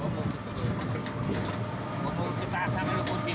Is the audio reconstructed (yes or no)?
no